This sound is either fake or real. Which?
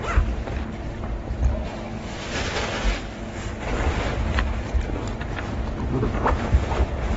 real